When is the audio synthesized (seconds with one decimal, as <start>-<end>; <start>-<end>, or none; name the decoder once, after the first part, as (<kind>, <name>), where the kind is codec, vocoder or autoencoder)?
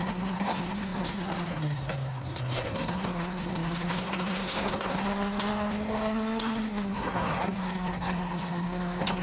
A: 0.0-9.2 (codec, SNAC)